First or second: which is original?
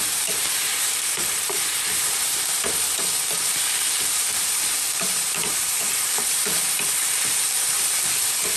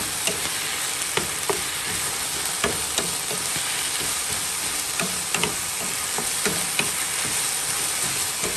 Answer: second